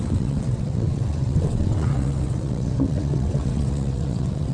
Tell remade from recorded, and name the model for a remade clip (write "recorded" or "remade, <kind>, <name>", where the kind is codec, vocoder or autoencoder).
remade, vocoder, WaveNeXt